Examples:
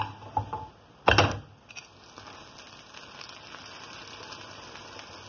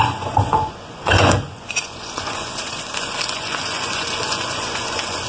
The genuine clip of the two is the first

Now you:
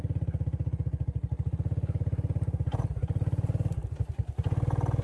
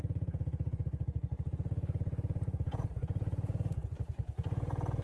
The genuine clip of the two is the first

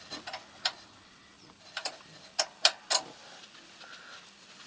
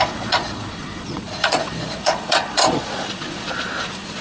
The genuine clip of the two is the first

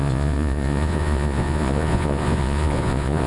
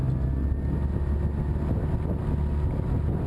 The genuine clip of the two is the second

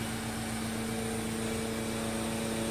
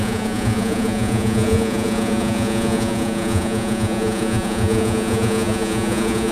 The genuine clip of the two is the first